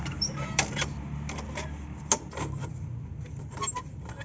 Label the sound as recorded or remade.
recorded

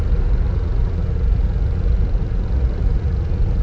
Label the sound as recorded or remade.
remade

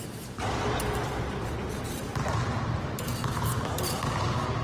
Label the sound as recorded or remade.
recorded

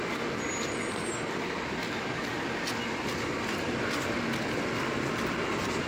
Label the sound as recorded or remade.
recorded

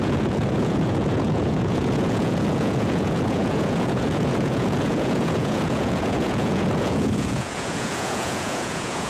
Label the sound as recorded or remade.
remade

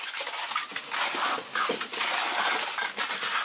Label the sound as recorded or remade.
recorded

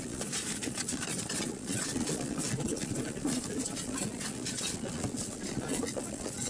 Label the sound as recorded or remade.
remade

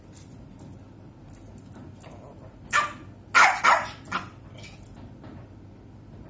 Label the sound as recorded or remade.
recorded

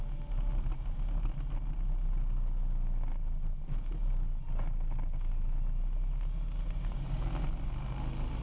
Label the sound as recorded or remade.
recorded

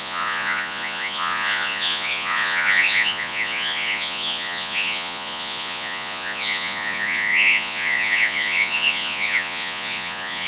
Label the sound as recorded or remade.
remade